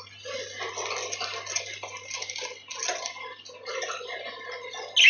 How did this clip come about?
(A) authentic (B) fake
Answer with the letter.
A